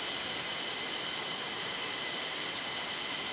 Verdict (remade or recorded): recorded